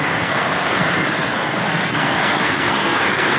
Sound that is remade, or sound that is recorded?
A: remade